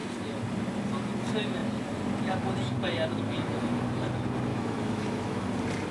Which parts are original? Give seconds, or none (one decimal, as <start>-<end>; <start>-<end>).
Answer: 0.0-4.5; 5.5-5.9